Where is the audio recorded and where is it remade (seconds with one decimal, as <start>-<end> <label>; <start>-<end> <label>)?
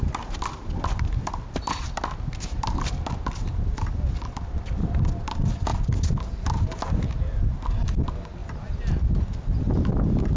0.0-10.4 recorded